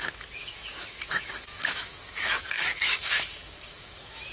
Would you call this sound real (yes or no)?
no